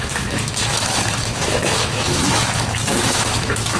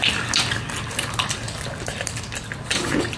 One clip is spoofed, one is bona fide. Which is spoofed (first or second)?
first